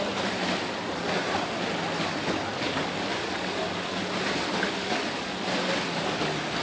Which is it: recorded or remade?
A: recorded